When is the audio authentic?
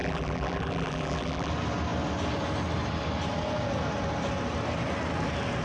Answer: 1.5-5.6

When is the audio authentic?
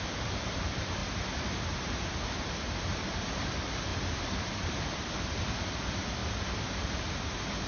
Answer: 1.0-2.9; 3.9-4.4; 6.2-7.7